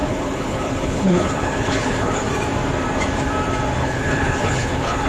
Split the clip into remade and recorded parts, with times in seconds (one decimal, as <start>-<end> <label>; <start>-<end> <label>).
0.0-2.2 remade; 2.2-3.8 recorded; 3.8-5.1 remade